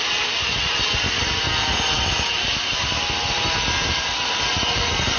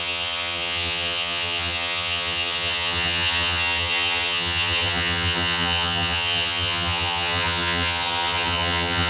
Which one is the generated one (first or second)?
second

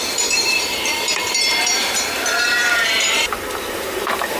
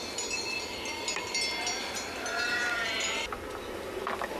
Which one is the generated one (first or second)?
first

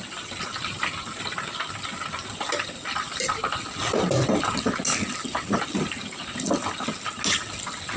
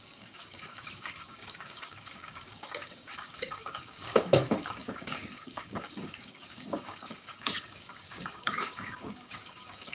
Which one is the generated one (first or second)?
second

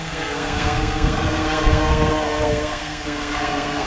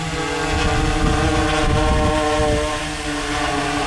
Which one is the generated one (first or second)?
first